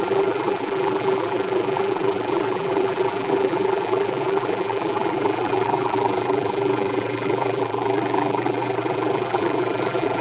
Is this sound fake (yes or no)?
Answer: yes